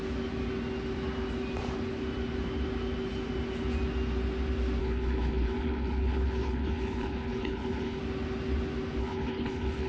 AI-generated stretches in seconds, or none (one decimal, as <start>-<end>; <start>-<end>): 4.8-8.0; 9.0-9.9